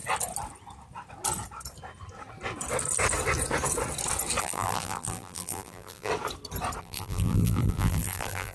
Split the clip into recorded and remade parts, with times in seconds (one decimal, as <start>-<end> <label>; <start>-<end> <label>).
0.0-4.4 recorded; 4.4-6.1 remade; 6.1-6.8 recorded; 6.8-8.5 remade

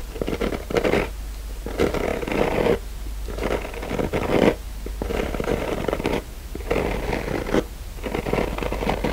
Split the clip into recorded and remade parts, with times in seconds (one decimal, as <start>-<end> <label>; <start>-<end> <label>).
0.0-5.1 recorded; 5.1-7.1 remade; 7.1-9.1 recorded